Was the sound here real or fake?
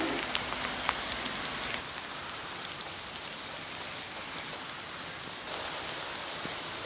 real